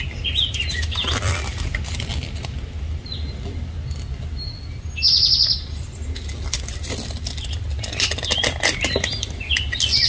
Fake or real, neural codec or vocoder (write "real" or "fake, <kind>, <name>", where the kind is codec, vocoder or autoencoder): real